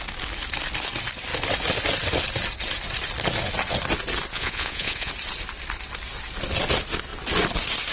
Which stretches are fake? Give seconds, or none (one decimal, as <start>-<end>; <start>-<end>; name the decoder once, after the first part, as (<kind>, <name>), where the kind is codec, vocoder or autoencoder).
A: 4.3-5.1 (vocoder, Vocos)